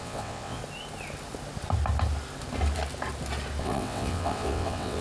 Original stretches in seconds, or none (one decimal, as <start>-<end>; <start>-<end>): 0.6-3.6